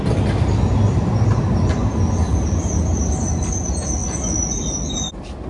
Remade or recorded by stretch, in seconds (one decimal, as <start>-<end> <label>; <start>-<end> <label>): 0.0-5.5 recorded